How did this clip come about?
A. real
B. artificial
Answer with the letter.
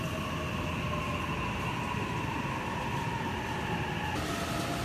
A